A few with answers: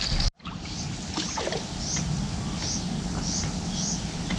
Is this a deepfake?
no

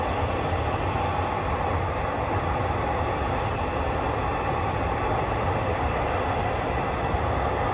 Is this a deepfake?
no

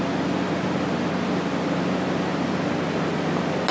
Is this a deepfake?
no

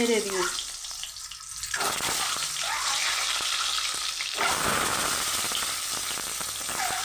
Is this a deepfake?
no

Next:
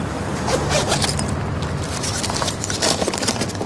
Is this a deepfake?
yes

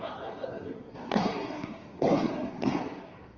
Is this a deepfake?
yes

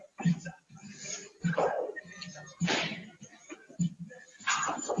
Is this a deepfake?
no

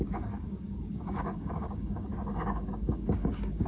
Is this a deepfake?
yes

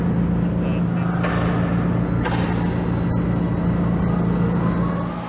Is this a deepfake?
no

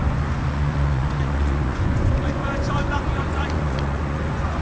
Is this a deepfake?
yes